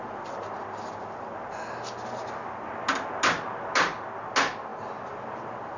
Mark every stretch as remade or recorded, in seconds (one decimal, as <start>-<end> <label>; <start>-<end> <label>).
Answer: 0.0-5.8 recorded